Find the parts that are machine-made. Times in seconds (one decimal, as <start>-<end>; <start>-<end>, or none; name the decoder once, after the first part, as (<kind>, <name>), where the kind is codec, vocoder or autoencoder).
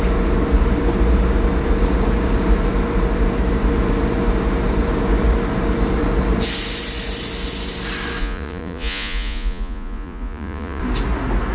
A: 8.2-10.8 (vocoder, Vocos)